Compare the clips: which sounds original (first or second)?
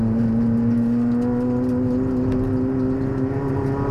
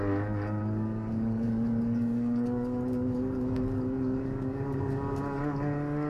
first